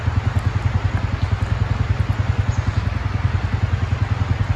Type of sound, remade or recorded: recorded